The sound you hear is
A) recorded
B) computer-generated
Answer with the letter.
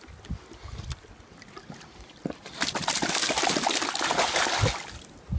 A